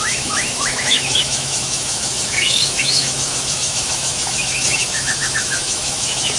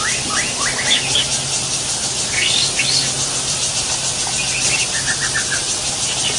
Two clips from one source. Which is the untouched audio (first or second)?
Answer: second